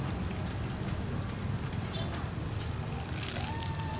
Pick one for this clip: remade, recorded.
recorded